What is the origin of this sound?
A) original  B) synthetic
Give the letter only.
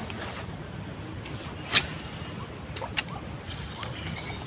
A